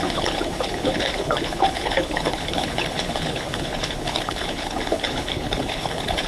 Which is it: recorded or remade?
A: remade